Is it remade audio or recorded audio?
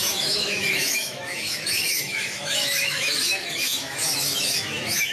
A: remade